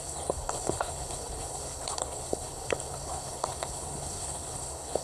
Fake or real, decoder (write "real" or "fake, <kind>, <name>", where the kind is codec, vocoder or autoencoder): fake, codec, HILCodec